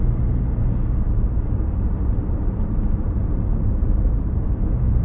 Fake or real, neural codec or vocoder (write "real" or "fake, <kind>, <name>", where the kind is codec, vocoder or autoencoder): fake, vocoder, BigVGAN v2